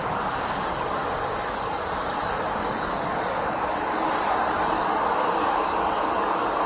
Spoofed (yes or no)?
yes